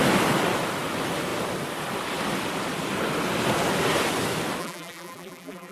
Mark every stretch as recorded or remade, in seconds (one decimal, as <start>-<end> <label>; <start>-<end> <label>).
0.0-4.6 recorded; 4.6-5.7 remade